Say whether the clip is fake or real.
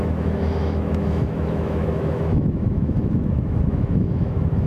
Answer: fake